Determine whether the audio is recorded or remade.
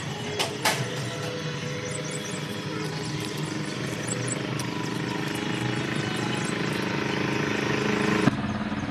recorded